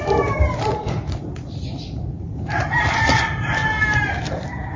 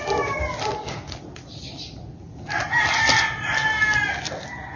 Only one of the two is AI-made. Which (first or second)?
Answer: first